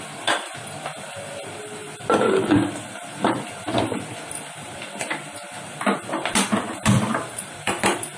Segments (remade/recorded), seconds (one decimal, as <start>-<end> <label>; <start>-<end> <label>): 0.0-1.8 recorded; 1.8-5.2 remade; 5.2-6.6 recorded; 6.6-8.2 remade